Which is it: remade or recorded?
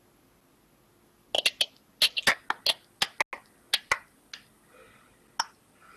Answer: recorded